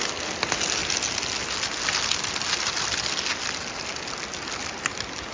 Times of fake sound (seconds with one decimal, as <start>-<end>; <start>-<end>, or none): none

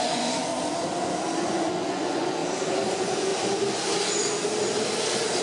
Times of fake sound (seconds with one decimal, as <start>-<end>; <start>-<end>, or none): 0.0-0.5; 1.4-2.4; 2.9-3.3

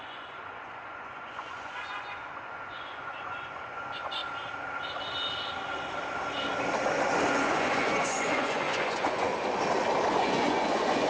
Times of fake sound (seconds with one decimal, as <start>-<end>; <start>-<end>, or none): 0.0-4.2; 7.3-9.3; 10.1-11.1